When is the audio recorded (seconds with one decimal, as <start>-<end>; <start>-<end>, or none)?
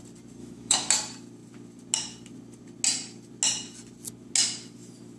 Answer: 0.0-0.4; 0.9-5.2